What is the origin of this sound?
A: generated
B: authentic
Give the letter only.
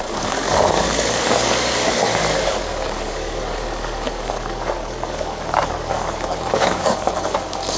A